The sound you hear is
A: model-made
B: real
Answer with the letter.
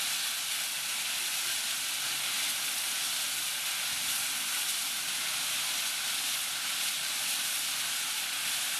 B